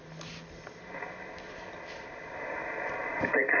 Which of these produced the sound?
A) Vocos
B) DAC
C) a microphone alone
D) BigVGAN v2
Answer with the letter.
C